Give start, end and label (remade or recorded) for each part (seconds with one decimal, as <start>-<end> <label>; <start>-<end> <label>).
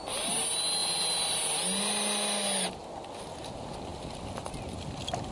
0.0-0.8 recorded; 0.8-1.4 remade; 1.4-3.9 recorded; 3.9-4.6 remade; 4.6-5.3 recorded